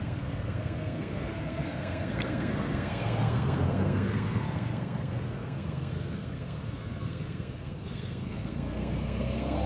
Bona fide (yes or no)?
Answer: no